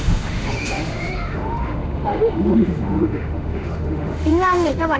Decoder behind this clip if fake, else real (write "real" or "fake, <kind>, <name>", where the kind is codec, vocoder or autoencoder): fake, autoencoder, DAC-VAE